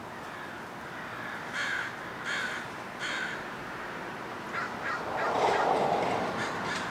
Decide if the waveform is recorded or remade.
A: recorded